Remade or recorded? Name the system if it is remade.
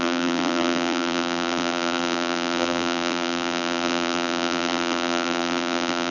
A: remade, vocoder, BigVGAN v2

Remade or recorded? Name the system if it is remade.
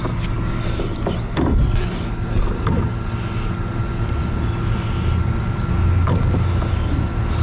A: recorded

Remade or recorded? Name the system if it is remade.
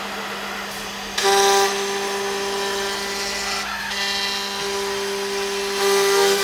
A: recorded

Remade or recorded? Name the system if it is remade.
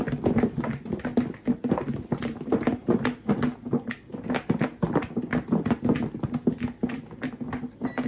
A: recorded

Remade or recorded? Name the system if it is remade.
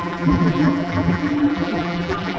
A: remade, vocoder, BigVGAN v2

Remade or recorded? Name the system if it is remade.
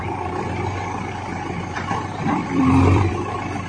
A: remade, vocoder, BigVGAN v2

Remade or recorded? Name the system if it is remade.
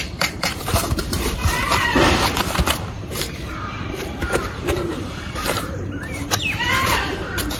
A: remade, vocoder, BigVGAN v2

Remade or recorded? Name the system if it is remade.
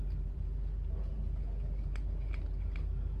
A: remade, vocoder, BigVGAN v2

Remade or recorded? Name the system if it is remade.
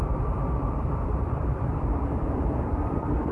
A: remade, vocoder, BigVGAN v2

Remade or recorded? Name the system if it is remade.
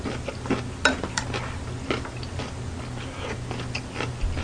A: recorded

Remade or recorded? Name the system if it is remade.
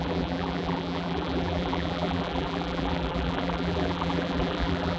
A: remade, vocoder, BigVGAN v2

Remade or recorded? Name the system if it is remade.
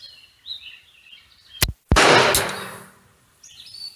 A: recorded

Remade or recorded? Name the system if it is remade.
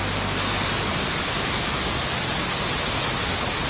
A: recorded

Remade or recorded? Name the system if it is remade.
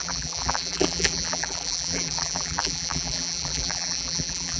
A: remade, vocoder, BigVGAN v2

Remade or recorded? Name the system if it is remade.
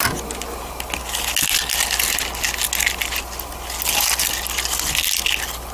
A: recorded